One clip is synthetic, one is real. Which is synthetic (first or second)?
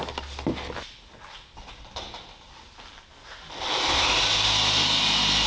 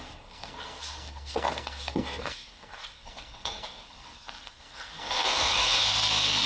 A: second